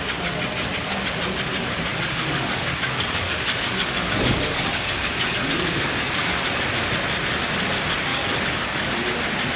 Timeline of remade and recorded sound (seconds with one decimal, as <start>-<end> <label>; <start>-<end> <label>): 0.0-1.9 recorded; 1.9-6.5 remade; 6.5-8.1 recorded; 8.1-8.9 remade; 8.9-9.6 recorded